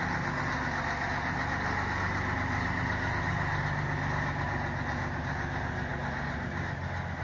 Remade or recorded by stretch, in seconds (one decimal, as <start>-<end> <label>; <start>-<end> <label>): 0.0-7.2 recorded